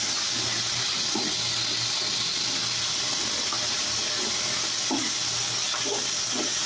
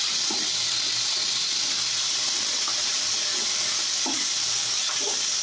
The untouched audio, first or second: first